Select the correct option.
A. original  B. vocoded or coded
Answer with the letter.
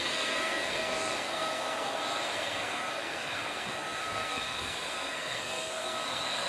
B